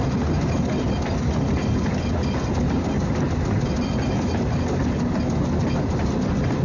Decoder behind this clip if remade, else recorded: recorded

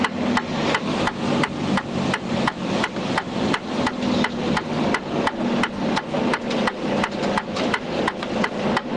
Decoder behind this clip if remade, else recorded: recorded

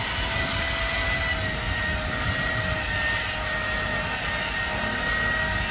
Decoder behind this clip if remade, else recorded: recorded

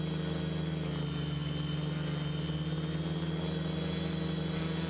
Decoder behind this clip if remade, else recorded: recorded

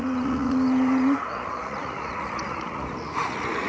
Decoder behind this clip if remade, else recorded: remade, vocoder, Vocos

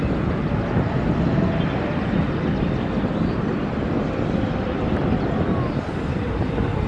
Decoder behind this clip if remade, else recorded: recorded